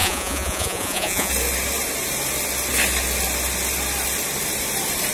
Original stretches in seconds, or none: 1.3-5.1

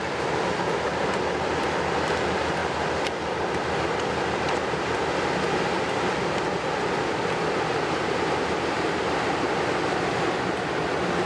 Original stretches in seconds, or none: 0.0-11.3

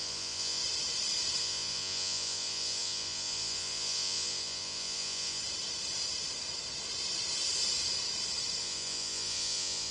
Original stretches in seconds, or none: 0.6-1.4; 5.4-8.6

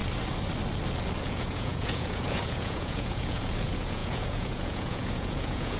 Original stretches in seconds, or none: 0.0-1.2

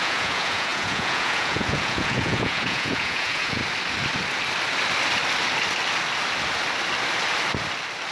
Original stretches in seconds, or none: 3.6-8.1

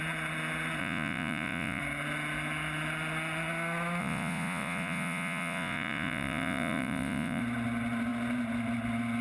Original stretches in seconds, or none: 0.0-0.8; 1.8-4.0; 7.4-9.2

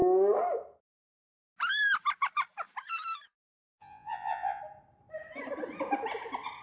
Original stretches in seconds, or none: 0.0-3.7; 4.6-6.6

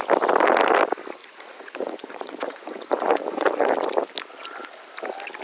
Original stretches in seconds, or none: 0.0-1.2; 3.7-5.4